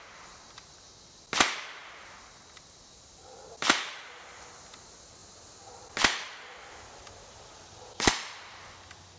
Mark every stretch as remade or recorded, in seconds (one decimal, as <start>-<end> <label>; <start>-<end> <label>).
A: 0.0-9.2 recorded